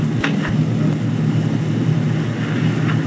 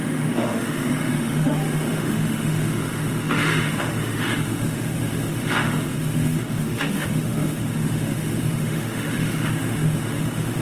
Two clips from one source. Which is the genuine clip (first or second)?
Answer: first